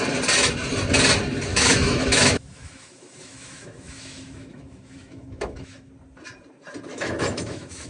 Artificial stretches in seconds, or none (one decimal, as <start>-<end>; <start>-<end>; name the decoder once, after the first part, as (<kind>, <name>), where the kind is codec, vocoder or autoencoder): 1.5-5.9 (autoencoder, DAC-VAE); 6.9-7.9